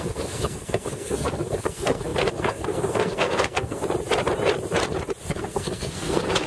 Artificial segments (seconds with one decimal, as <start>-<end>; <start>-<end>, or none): 0.0-3.8; 5.3-6.5